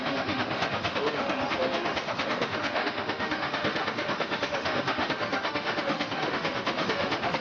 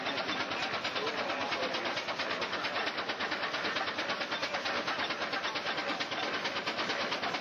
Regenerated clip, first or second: first